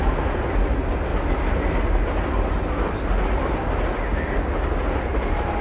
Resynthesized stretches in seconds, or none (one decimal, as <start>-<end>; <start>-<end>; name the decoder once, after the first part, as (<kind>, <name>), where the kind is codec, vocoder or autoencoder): none